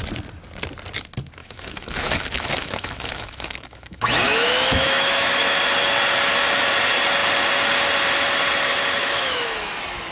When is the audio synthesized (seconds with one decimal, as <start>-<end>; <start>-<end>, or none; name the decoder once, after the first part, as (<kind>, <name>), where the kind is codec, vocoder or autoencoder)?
1.4-5.6 (autoencoder, DAC-VAE); 9.0-9.7